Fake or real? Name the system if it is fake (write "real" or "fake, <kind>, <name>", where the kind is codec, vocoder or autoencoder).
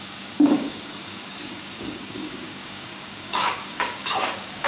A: fake, codec, DAC